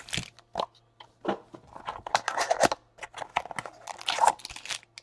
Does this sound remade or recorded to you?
recorded